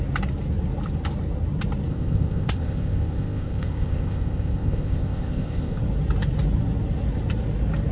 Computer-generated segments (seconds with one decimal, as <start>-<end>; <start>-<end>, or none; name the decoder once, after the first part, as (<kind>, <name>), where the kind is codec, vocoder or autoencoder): 1.9-5.8 (codec, ZipCodec)